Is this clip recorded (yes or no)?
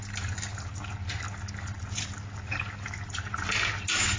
yes